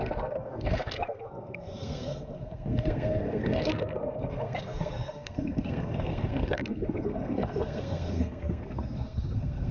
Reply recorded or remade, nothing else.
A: remade